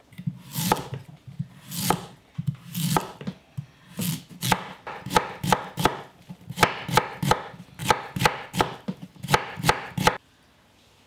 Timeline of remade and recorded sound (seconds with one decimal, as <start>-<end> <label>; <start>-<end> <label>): 0.0-11.1 recorded